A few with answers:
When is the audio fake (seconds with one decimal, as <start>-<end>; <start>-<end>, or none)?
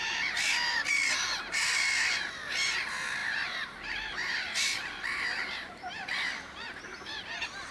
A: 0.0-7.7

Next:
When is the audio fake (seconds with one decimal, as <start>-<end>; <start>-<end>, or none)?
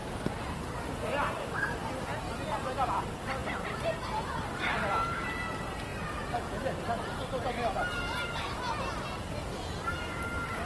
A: 0.0-1.8; 2.9-3.4; 4.8-5.9; 9.9-10.6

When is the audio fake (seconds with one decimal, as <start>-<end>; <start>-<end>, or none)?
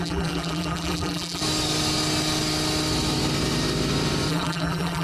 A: 0.0-1.4; 4.3-5.0